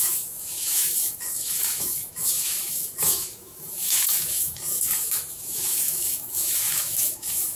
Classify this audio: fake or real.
fake